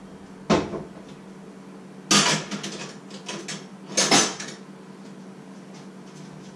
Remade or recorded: recorded